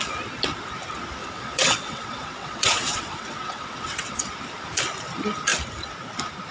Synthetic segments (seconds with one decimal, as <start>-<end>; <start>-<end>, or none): 1.2-4.3